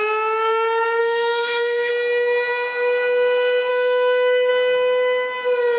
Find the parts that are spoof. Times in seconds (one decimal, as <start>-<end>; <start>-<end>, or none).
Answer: 1.0-1.9; 3.7-4.5